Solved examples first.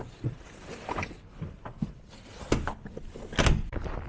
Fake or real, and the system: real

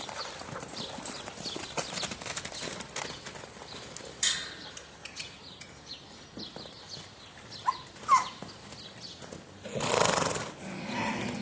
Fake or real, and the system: real